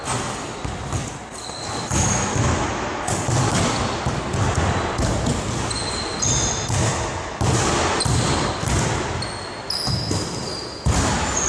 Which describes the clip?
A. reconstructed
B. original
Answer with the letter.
B